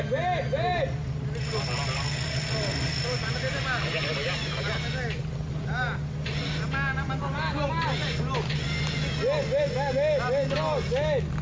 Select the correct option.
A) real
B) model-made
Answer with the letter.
A